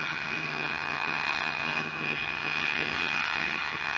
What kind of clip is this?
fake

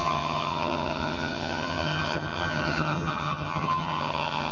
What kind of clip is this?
fake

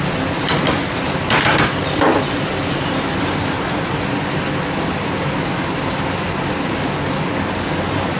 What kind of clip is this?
real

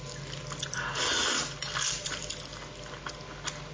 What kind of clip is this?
real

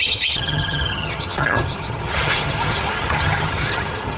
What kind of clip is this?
fake